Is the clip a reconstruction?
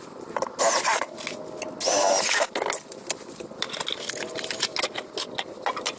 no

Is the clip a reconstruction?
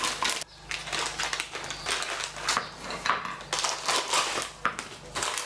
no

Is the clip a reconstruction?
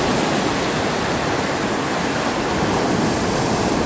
no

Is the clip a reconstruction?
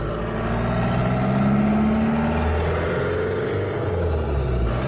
no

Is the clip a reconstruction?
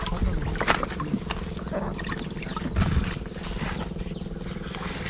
no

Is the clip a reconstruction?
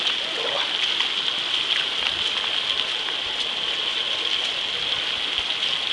no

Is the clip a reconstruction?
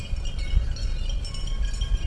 no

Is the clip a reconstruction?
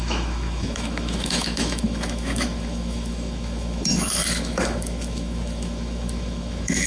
yes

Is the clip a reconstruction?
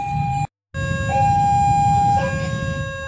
no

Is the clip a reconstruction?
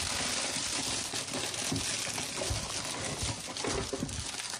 no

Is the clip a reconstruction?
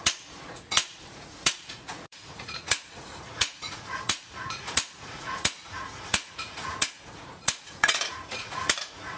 yes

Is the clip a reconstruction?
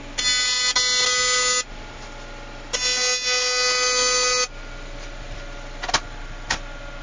no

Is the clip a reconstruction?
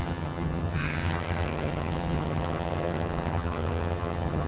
yes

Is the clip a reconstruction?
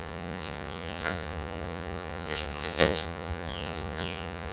yes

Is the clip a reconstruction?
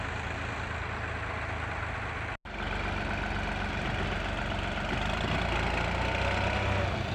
no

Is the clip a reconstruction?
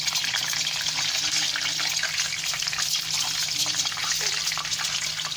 no